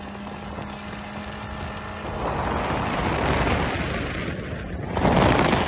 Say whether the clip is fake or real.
real